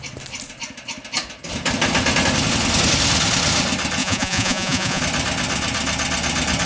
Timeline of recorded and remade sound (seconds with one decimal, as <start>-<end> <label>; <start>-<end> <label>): 0.0-4.0 recorded; 4.0-5.0 remade; 5.0-6.7 recorded